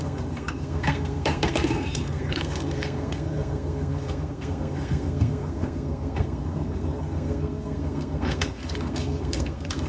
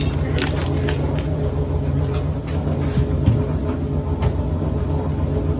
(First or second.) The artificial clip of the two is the first